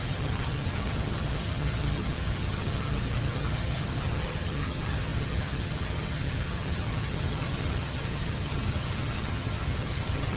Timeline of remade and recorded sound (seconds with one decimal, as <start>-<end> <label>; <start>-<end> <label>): 0.0-10.4 remade